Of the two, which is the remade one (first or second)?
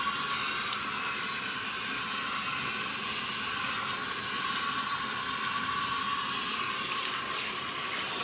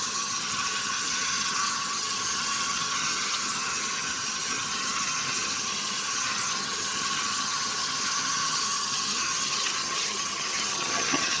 second